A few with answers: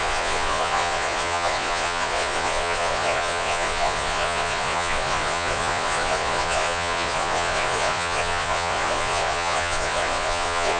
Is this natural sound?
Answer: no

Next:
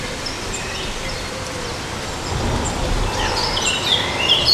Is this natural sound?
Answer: yes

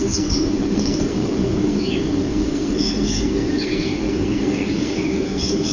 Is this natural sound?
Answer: no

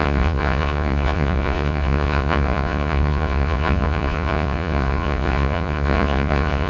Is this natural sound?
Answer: no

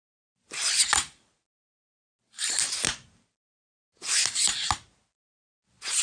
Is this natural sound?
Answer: yes